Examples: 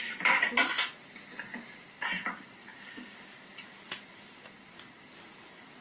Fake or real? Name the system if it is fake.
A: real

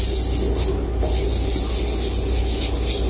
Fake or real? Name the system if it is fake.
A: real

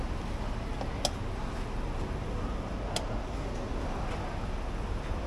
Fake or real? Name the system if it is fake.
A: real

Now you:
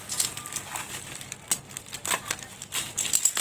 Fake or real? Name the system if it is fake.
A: real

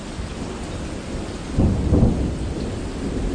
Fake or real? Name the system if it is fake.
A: real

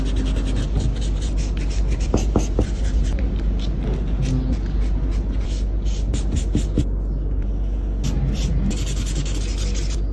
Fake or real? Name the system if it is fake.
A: real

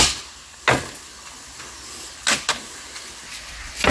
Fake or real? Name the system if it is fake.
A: real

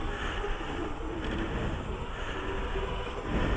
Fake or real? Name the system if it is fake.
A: real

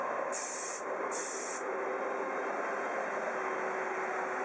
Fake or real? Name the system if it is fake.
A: real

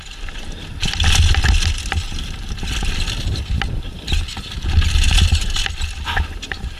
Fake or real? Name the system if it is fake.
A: real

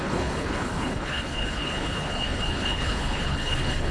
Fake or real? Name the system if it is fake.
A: fake, codec, HILCodec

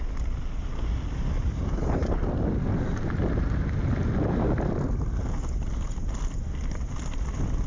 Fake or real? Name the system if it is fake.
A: real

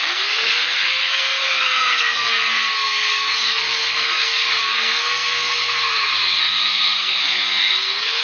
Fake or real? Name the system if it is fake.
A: fake, codec, SNAC